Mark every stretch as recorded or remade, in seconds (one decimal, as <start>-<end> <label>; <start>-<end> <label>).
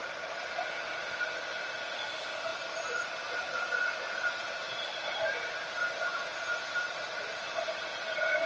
0.0-6.0 recorded; 6.0-6.7 remade; 6.7-8.5 recorded